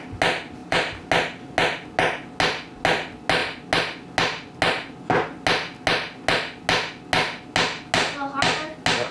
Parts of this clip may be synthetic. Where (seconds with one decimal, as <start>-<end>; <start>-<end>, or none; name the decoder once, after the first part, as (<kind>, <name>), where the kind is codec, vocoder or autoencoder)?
0.6-1.1 (vocoder, BigVGAN v2)